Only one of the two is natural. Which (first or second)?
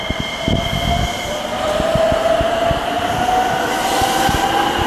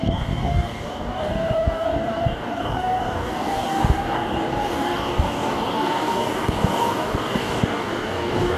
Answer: first